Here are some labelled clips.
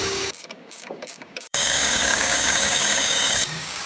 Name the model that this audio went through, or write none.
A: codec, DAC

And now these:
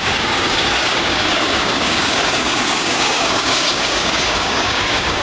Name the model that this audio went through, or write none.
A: codec, DAC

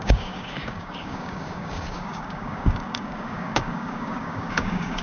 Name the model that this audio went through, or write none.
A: codec, DAC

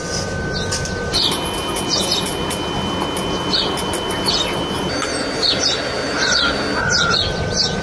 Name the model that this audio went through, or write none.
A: none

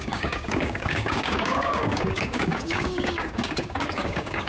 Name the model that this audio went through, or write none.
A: codec, DAC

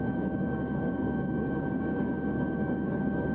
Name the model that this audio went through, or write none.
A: codec, DAC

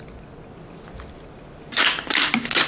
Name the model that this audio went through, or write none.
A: none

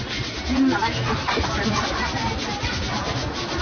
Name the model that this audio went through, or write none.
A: none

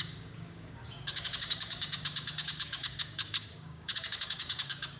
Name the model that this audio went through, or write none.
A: codec, DAC